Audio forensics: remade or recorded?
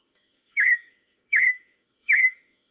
remade